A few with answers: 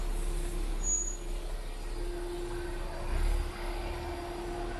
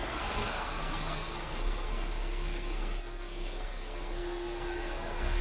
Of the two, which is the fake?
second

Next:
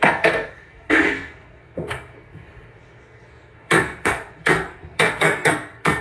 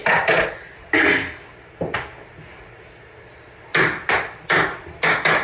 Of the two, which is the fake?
first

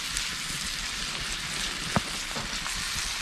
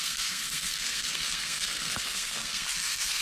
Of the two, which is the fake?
second